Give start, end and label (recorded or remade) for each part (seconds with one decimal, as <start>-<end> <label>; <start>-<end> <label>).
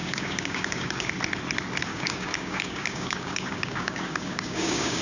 0.0-1.1 remade; 1.1-1.9 recorded; 1.9-5.0 remade